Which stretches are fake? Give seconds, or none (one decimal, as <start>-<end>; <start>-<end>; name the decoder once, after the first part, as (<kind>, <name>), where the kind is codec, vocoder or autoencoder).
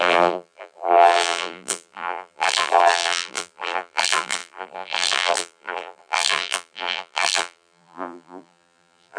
0.0-9.2 (vocoder, BigVGAN v2)